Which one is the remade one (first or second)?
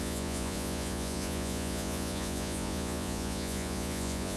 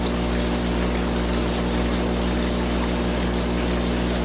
first